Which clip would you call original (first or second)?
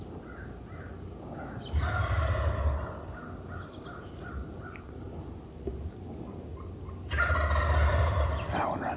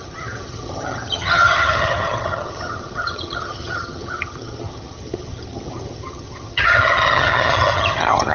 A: first